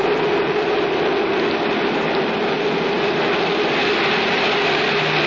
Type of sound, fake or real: real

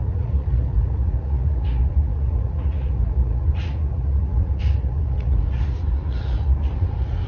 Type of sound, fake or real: fake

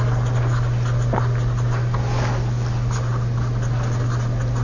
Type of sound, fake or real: real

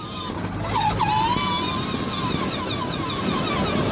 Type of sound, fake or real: real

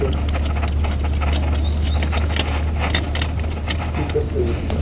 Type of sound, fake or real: real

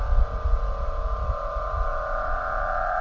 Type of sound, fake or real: fake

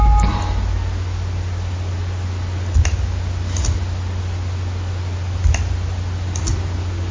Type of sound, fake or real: real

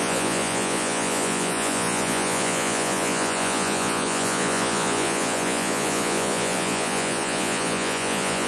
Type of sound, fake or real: fake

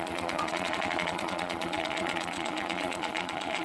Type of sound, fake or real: fake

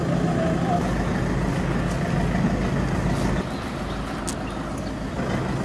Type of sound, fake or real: real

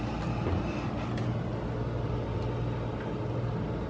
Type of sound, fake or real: real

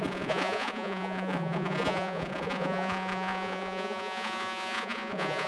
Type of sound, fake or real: fake